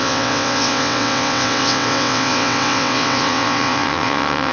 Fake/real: fake